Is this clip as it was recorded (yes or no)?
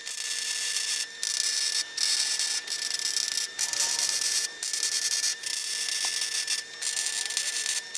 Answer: yes